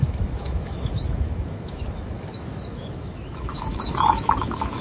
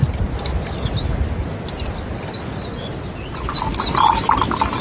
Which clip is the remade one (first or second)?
first